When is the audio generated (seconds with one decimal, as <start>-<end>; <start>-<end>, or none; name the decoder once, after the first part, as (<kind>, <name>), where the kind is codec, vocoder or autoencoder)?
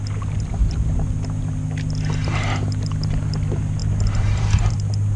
3.8-5.2 (vocoder, BigVGAN v2)